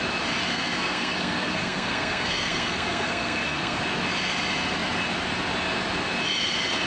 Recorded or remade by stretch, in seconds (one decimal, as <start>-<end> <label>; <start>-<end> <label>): 0.0-0.5 recorded; 0.5-3.8 remade; 3.8-6.9 recorded